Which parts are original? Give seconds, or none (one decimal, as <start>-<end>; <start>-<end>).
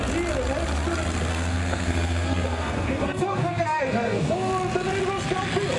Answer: 0.0-1.3; 4.5-5.8